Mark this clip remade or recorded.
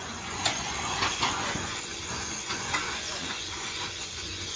remade